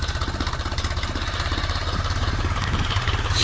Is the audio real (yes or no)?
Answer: no